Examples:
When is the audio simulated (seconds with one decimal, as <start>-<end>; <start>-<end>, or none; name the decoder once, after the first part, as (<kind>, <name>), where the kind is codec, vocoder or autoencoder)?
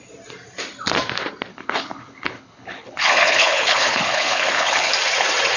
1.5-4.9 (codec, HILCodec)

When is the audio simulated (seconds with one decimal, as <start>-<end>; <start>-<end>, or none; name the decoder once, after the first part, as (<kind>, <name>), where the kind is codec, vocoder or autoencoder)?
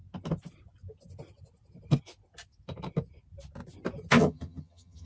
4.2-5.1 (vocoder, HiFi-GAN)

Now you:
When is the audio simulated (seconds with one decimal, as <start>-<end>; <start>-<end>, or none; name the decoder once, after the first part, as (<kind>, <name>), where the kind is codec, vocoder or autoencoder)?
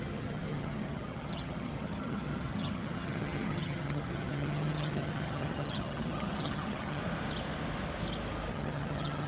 0.0-7.0 (vocoder, HiFi-GAN); 8.5-9.3